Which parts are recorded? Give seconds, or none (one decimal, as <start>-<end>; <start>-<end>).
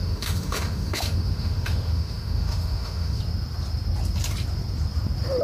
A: 3.2-5.4